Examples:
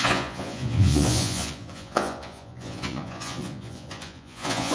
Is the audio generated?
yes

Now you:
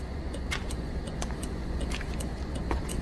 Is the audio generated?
yes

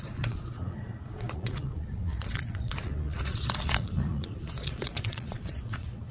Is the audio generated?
yes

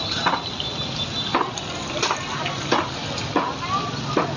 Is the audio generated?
no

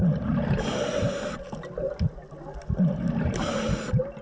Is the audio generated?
no